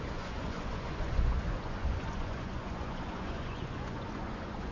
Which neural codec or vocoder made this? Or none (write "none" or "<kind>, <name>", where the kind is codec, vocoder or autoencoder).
vocoder, Vocos